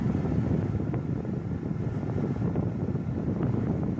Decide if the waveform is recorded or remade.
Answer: recorded